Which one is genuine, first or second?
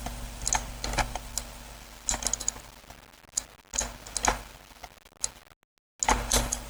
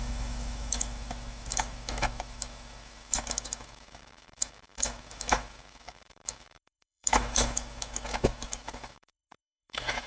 first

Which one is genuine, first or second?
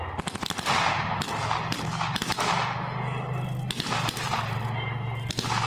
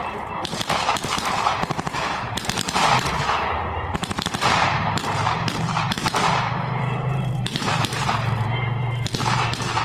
first